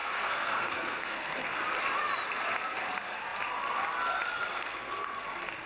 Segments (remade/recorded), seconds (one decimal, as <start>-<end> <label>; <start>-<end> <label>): 0.0-1.6 remade; 1.6-4.5 recorded; 4.5-5.2 remade; 5.2-5.7 recorded